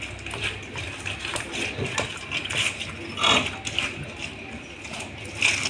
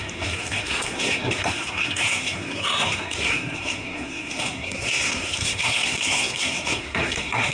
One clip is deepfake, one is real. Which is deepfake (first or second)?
second